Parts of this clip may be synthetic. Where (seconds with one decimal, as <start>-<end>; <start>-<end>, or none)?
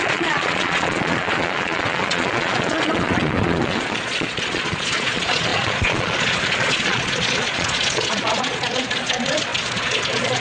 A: 0.0-10.4